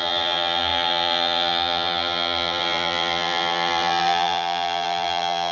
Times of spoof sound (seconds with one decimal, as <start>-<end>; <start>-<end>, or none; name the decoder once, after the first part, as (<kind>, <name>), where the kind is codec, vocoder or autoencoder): 0.0-5.5 (vocoder, BigVGAN v2)